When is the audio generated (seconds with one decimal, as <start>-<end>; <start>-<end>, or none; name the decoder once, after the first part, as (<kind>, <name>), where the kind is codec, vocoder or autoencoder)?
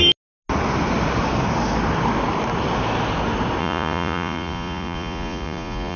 3.6-6.0 (vocoder, Vocos)